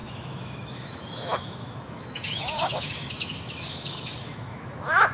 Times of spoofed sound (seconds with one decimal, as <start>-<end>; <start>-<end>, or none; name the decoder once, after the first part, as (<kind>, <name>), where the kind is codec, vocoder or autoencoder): 0.0-5.1 (autoencoder, DAC-VAE)